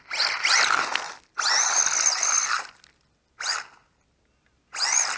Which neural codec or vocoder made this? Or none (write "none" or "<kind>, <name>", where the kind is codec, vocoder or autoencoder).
none